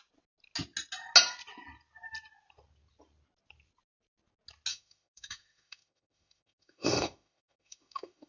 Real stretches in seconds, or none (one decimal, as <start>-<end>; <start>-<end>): 0.0-4.7